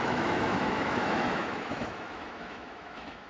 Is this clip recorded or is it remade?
remade